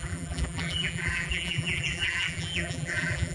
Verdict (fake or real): fake